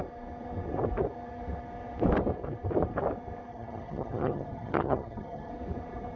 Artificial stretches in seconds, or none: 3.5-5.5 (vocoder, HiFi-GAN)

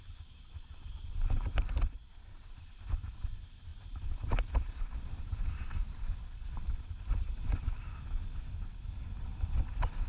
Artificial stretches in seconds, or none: 0.0-5.8 (vocoder, BigVGAN v2)

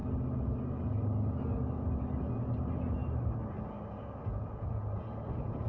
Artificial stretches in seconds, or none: 4.3-4.8 (vocoder, Vocos)

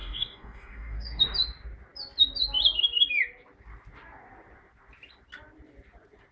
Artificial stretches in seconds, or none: 0.0-1.2 (codec, DAC)

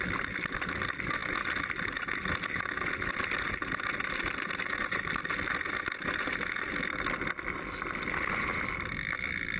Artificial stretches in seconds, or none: none

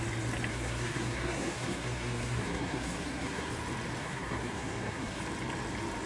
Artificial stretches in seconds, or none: 0.5-3.5 (codec, SNAC); 4.0-5.2

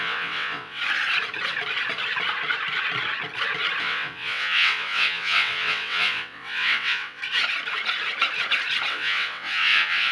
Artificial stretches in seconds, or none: 0.0-0.8 (vocoder, WaveNeXt); 3.8-7.2; 8.9-10.1

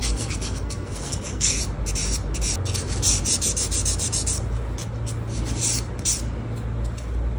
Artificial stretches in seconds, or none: 0.0-1.6 (codec, SNAC)